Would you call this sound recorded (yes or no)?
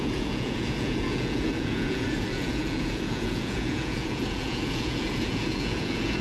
no